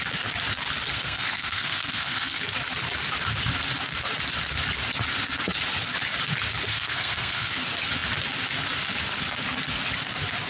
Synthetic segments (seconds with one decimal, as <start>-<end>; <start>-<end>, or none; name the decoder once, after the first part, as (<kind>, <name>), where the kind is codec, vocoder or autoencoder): 0.9-2.4 (codec, SNAC); 6.7-7.5